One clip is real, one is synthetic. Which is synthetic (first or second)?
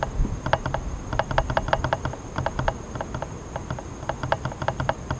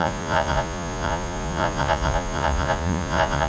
second